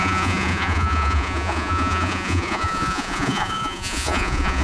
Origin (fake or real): fake